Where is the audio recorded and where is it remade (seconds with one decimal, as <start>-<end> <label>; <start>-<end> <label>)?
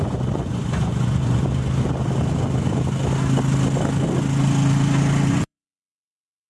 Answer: 0.0-1.4 remade; 1.4-5.3 recorded; 5.3-6.5 remade